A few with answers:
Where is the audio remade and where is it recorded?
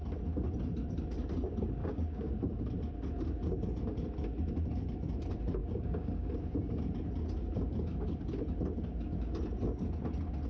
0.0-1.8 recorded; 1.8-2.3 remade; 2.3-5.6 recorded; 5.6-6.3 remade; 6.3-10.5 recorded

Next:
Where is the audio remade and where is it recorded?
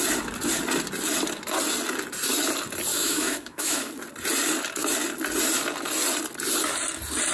0.0-2.9 recorded; 2.9-3.9 remade; 3.9-7.3 recorded